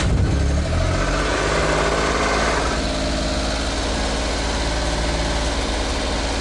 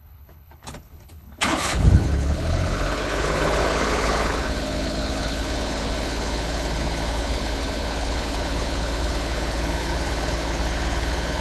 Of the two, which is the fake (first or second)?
second